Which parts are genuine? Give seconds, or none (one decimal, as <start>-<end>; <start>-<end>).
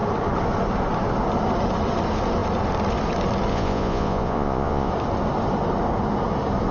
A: 0.0-3.5; 4.9-6.7